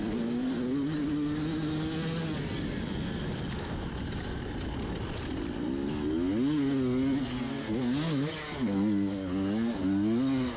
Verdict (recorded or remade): recorded